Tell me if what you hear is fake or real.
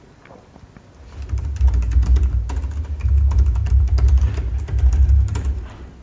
real